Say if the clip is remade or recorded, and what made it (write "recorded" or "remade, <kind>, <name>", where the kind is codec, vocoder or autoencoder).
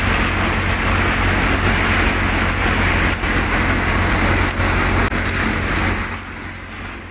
recorded